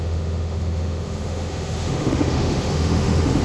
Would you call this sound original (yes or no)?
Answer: no